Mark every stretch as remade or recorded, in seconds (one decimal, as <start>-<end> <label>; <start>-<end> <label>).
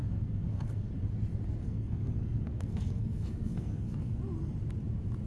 0.0-0.9 remade; 0.9-1.6 recorded; 1.6-4.2 remade; 4.2-5.3 recorded